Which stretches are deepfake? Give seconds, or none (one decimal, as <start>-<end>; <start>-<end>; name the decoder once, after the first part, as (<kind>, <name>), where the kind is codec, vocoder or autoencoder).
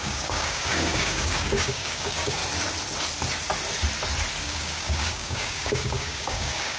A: 0.0-2.4 (codec, DAC); 4.4-6.8